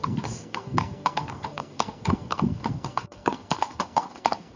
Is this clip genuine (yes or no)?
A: no